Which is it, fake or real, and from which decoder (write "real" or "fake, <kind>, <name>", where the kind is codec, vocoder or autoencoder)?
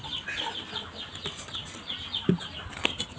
real